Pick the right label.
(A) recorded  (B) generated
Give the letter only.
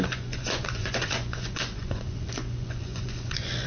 B